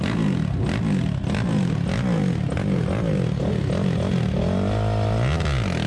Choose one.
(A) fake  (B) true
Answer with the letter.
B